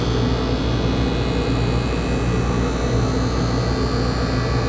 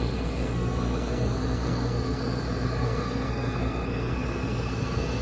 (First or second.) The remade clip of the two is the second